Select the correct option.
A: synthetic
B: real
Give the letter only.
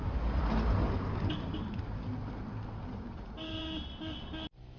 B